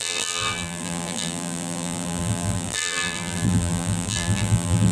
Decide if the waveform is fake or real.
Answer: fake